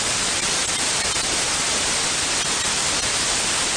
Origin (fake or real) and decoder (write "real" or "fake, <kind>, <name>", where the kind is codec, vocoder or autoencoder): real